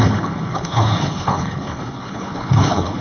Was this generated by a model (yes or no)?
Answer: yes